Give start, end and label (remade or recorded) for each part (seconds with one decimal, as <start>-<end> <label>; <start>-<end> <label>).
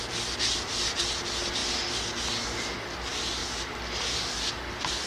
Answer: 0.0-5.1 recorded